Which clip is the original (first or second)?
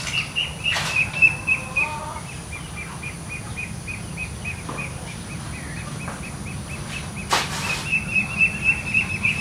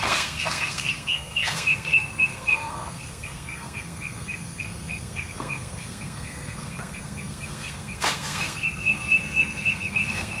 first